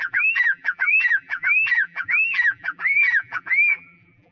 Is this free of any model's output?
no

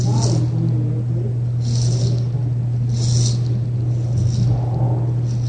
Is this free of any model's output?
yes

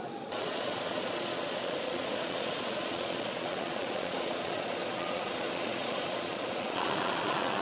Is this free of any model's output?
no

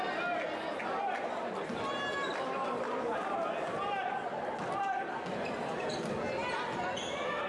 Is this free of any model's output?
yes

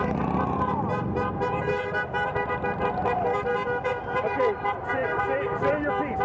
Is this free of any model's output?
no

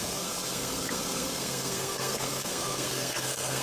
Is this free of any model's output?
no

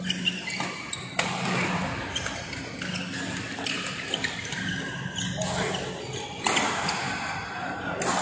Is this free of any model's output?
yes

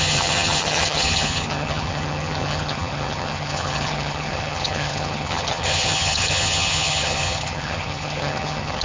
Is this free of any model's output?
no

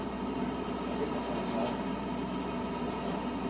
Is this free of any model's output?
yes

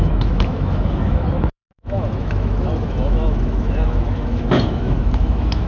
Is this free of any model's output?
no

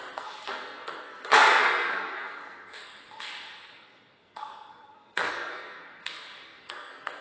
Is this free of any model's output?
no